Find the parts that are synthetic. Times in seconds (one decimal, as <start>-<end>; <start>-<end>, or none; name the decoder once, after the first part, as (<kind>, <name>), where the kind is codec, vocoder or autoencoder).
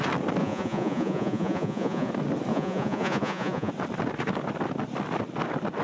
0.4-2.1 (vocoder, Vocos); 2.5-3.7